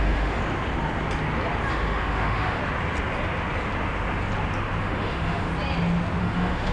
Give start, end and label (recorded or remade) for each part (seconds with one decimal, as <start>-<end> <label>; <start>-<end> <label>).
0.0-0.4 remade; 0.4-1.7 recorded; 1.7-2.6 remade; 2.6-4.8 recorded; 4.8-5.5 remade; 5.5-6.2 recorded; 6.2-6.7 remade